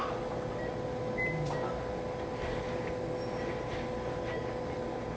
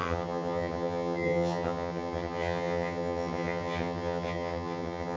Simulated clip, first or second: second